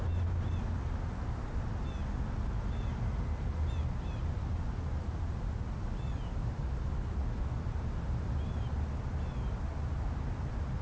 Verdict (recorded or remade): recorded